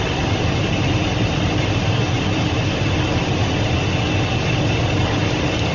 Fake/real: real